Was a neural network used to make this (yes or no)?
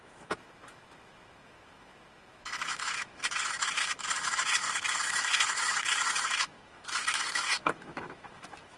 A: yes